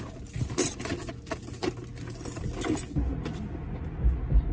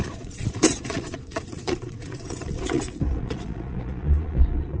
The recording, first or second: first